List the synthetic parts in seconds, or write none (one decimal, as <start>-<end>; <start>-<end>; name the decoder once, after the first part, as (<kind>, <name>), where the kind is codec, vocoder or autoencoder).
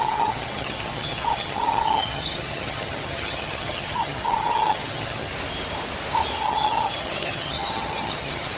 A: 0.0-5.3 (vocoder, HiFi-GAN); 6.4-8.6